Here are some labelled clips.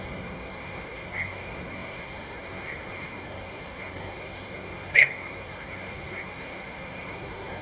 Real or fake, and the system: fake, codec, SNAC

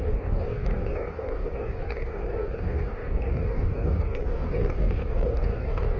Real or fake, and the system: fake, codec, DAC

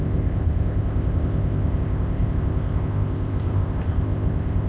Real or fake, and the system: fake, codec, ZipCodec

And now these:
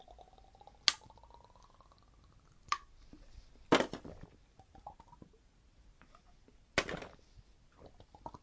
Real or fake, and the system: real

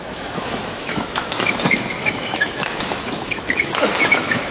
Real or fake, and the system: fake, autoencoder, DAC-VAE